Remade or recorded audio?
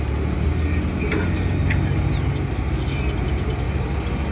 recorded